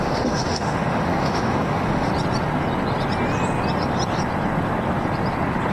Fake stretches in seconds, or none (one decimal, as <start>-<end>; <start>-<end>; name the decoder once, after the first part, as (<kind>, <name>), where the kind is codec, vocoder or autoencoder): 0.0-2.1 (autoencoder, DAC-VAE)